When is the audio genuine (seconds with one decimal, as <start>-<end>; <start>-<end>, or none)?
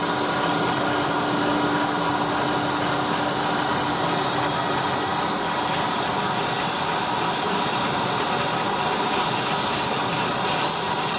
0.0-11.2